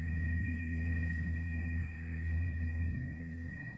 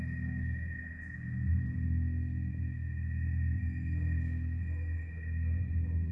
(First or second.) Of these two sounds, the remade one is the first